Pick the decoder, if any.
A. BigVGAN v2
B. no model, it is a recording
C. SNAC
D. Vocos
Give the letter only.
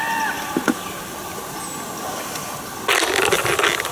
B